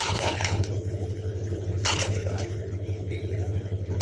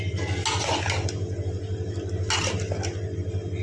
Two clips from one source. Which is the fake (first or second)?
first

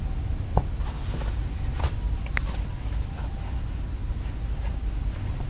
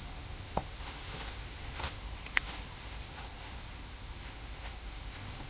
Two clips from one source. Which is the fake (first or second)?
second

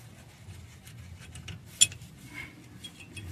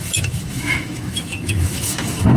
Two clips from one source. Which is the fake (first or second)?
second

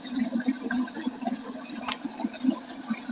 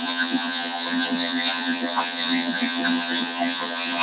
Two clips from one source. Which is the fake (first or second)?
second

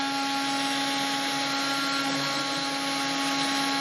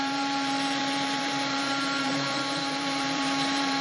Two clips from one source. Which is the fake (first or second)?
second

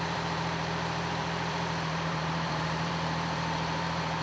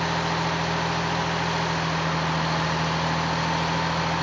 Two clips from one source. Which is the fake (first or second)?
first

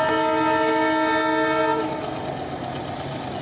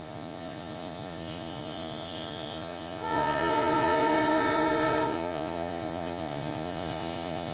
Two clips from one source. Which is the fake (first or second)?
second